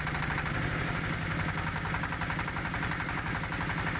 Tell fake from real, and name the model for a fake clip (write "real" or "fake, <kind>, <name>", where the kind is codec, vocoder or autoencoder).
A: real